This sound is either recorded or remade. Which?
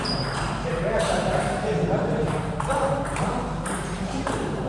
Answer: remade